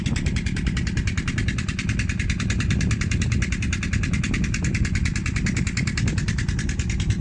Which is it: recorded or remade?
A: recorded